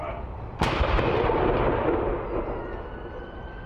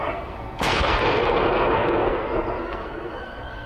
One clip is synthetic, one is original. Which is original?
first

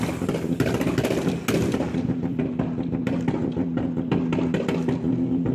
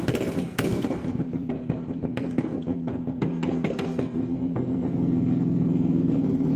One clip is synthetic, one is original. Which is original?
first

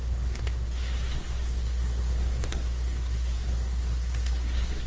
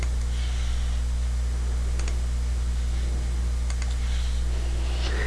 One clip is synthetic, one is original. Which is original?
second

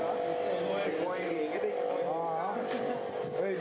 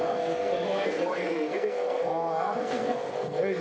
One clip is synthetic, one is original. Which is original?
first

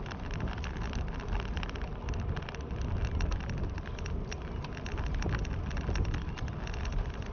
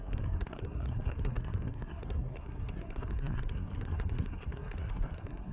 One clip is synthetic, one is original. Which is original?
first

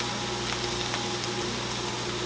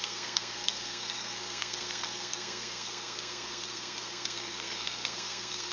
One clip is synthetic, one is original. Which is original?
first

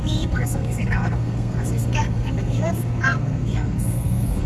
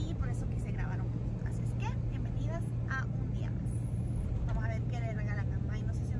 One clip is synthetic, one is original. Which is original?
second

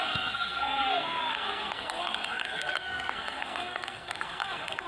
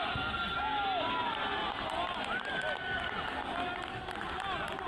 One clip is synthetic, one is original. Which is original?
second